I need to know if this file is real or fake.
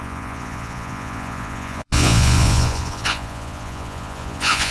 fake